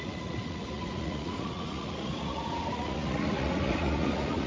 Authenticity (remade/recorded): remade